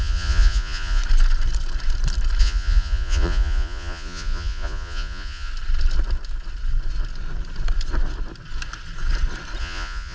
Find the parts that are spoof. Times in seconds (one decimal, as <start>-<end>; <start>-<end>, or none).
0.0-1.0; 2.4-5.5; 9.6-10.1